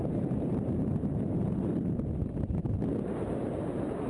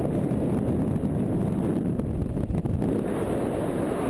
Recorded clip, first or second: second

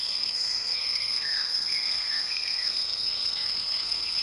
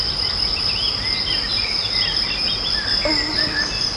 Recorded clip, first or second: second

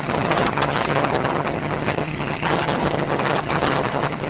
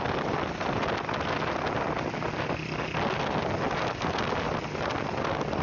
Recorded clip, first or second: second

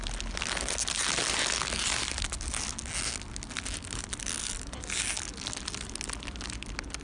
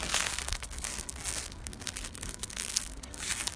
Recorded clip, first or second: first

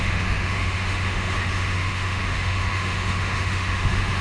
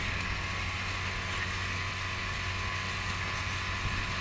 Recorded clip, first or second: second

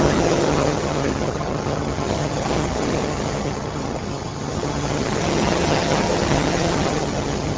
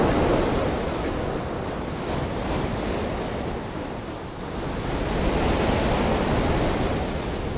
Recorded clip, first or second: second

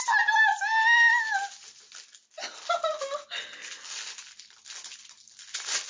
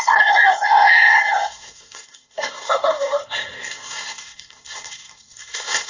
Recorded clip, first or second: first